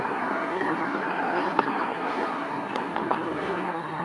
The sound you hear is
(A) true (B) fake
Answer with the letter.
B